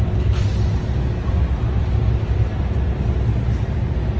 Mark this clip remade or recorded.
recorded